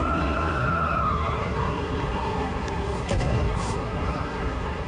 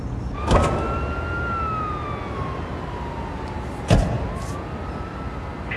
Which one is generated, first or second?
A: first